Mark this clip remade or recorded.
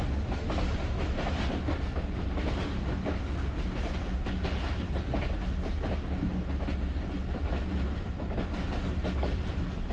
recorded